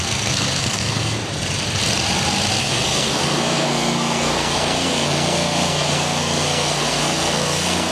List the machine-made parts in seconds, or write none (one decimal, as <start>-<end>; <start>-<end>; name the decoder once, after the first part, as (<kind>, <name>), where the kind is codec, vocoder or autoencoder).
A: 0.0-1.2 (codec, SNAC); 2.6-7.9